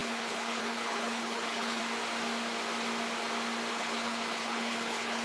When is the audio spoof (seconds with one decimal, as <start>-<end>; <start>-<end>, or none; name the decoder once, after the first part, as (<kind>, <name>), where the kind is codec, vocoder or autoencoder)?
0.0-1.8 (codec, HILCodec); 3.7-5.2